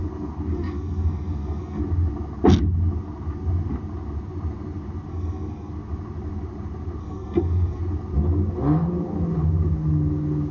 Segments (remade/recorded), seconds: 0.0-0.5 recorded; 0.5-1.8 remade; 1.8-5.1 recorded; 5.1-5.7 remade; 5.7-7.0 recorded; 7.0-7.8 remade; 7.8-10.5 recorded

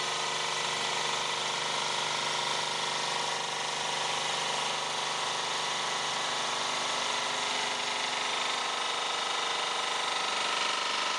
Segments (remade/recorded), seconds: 0.0-11.2 recorded

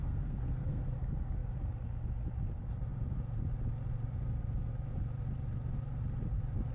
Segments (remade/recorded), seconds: 0.0-0.8 remade; 0.8-6.7 recorded

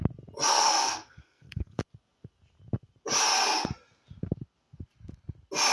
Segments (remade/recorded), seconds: 0.0-0.5 recorded; 0.5-1.8 remade; 1.8-5.7 recorded

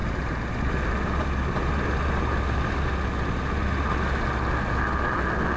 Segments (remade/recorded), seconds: 0.0-5.6 recorded

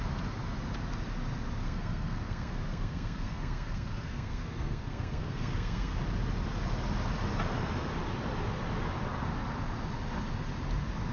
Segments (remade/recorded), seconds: 0.0-1.6 recorded; 1.6-6.0 remade; 6.0-11.1 recorded